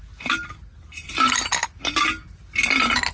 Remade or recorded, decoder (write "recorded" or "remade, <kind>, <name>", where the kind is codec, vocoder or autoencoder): recorded